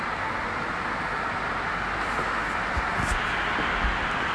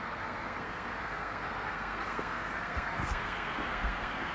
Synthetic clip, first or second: second